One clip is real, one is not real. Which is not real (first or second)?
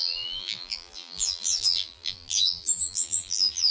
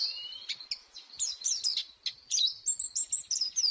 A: first